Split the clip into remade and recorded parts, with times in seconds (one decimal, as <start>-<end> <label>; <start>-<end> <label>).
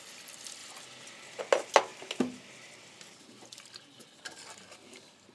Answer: 0.0-5.3 recorded